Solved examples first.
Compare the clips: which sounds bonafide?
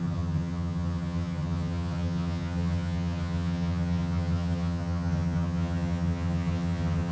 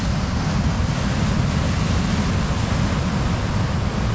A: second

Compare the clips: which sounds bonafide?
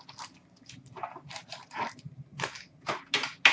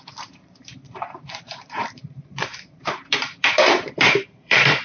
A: first